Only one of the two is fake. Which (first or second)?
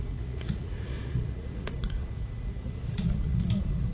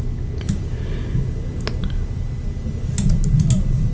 first